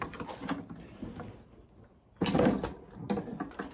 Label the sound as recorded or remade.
recorded